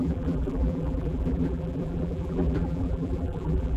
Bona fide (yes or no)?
no